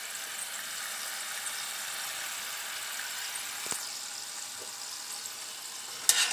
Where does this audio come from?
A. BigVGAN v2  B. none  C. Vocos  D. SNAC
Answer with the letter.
B